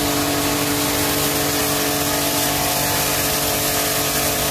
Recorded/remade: recorded